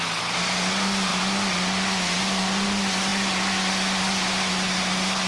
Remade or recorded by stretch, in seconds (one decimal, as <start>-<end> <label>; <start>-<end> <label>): 0.0-5.3 recorded